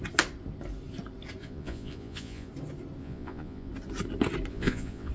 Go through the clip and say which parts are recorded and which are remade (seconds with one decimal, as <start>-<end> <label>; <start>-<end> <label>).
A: 0.0-1.4 recorded; 1.4-2.5 remade; 2.5-3.0 recorded; 3.0-3.7 remade; 3.7-4.5 recorded; 4.5-5.1 remade